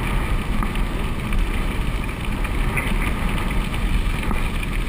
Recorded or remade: recorded